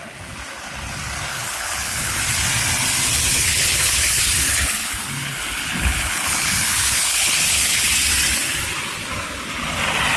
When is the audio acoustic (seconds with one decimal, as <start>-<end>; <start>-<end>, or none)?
0.0-1.3; 2.2-3.3; 7.9-10.2